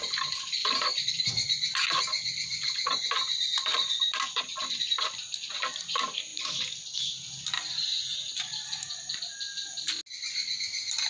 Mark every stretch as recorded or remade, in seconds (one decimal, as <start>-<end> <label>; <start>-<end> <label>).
0.0-0.6 recorded; 0.6-1.2 remade; 1.2-1.7 recorded; 1.7-5.0 remade; 5.0-8.5 recorded; 8.5-9.9 remade; 9.9-11.1 recorded